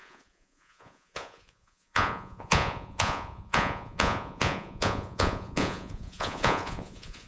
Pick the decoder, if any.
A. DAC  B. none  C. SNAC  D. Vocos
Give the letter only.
D